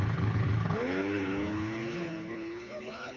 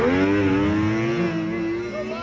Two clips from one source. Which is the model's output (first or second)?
first